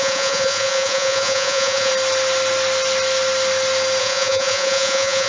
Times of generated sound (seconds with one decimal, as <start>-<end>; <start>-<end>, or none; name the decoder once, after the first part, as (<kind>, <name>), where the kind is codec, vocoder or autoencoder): 0.0-1.9 (vocoder, Vocos); 4.0-5.3